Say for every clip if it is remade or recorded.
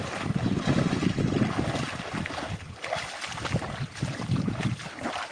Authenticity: recorded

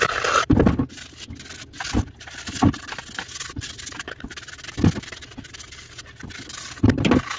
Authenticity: recorded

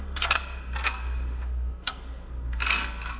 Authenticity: remade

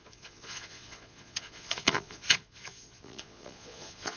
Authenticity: remade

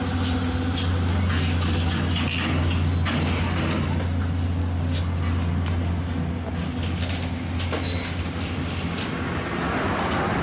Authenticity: recorded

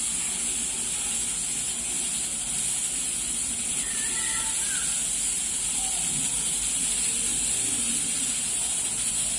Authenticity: recorded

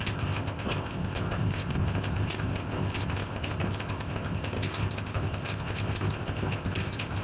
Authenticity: remade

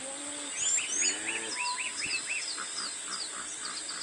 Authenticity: recorded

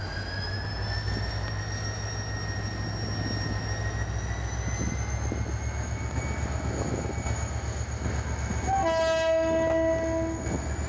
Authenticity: recorded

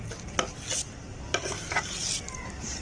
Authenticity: recorded